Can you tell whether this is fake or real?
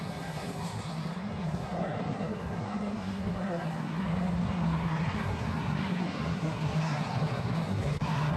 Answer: fake